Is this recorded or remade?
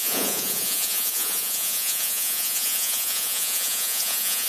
remade